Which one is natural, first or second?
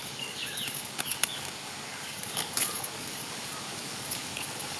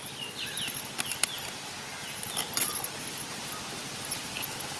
second